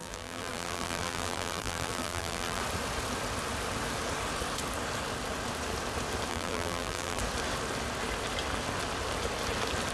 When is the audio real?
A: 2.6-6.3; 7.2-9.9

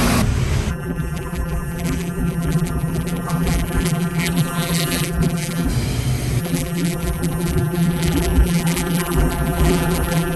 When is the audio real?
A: 0.0-0.7; 5.7-6.4

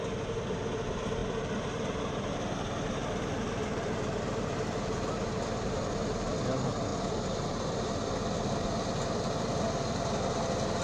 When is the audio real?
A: 0.0-3.0; 5.1-6.9; 7.9-10.8

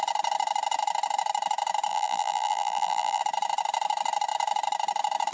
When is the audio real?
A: 0.0-1.9; 3.2-5.3

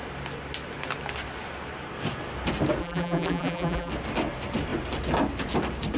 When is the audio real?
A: 0.0-2.8; 3.9-6.0